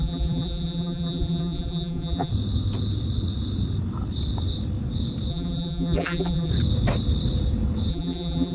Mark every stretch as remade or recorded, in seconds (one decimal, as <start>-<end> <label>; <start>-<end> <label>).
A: 0.0-2.3 remade; 2.3-5.3 recorded; 5.3-6.5 remade; 6.5-7.9 recorded; 7.9-8.5 remade